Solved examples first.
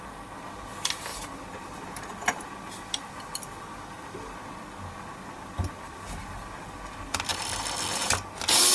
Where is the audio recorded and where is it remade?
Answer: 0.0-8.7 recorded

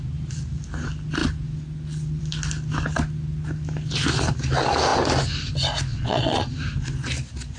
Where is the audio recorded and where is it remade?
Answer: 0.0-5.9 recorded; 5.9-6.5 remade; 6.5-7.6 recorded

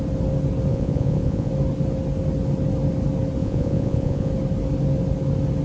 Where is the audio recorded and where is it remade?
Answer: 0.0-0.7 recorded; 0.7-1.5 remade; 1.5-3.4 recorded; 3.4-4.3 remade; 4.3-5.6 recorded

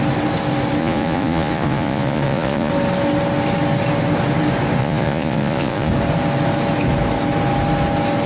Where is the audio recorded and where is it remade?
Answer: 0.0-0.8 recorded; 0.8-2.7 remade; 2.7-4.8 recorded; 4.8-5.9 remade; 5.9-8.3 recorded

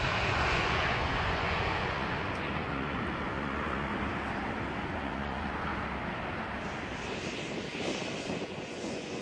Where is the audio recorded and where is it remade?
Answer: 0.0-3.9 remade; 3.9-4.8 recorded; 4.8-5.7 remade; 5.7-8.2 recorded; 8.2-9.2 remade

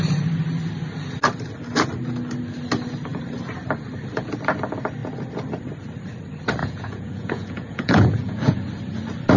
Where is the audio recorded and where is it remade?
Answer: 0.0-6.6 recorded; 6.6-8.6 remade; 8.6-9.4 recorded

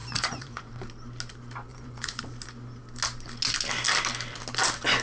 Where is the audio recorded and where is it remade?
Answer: 0.0-0.7 remade; 0.7-1.7 recorded; 1.7-2.2 remade; 2.2-5.0 recorded